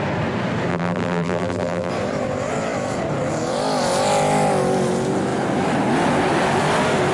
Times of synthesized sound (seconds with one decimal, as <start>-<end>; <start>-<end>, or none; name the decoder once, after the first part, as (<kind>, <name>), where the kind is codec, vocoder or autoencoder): 0.7-1.9 (vocoder, BigVGAN v2)